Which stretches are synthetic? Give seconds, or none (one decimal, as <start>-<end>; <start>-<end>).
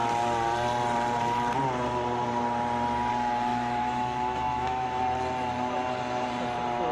3.5-5.0